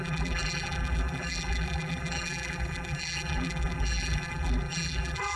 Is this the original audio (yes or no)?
no